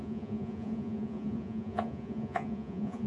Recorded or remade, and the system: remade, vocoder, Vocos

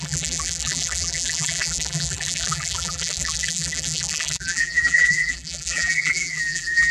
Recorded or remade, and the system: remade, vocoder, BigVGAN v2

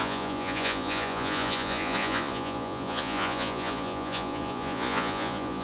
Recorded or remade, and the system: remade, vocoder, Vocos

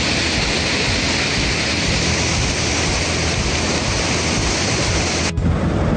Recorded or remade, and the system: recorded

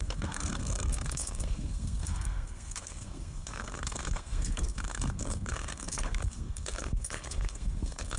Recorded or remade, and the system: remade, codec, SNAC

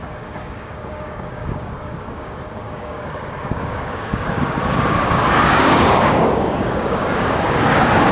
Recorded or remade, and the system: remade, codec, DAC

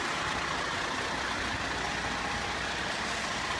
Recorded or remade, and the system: recorded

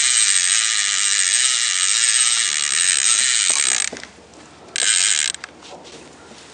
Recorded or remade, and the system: recorded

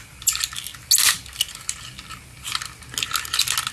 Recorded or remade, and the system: recorded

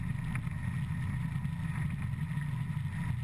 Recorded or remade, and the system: recorded